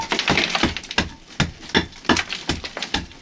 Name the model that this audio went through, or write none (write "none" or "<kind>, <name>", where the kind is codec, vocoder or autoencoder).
none